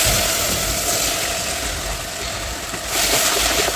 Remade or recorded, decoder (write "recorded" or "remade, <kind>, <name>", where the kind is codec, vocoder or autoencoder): recorded